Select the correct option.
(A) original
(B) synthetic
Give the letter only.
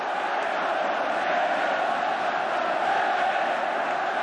A